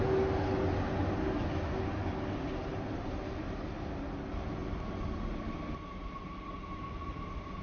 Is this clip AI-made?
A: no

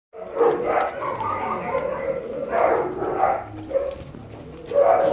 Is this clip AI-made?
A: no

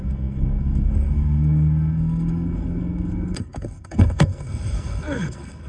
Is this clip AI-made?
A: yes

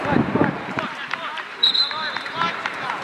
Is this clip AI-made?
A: yes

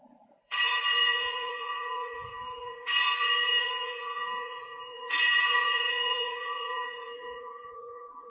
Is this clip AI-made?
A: yes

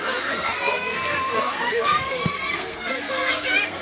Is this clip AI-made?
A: yes